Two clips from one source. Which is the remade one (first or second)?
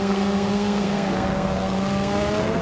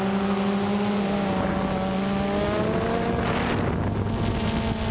first